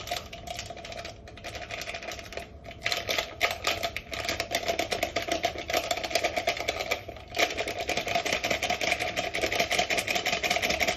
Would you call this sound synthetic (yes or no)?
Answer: no